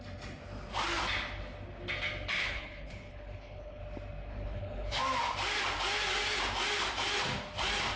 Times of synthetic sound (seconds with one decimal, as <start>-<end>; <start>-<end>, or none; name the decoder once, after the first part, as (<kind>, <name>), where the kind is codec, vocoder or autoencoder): 2.4-3.8 (codec, HILCodec); 4.3-5.0